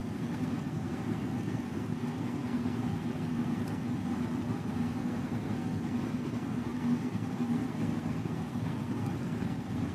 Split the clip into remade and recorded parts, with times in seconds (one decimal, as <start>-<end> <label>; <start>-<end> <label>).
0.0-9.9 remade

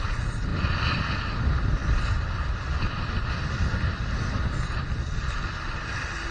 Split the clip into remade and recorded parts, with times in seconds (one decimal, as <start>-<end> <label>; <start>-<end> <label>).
0.0-6.3 recorded

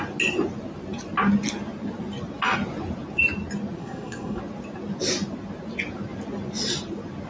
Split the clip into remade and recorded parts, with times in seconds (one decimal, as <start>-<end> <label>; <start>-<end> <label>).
0.0-3.8 recorded; 3.8-4.4 remade; 4.4-7.3 recorded